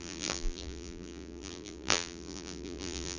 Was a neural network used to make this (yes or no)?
yes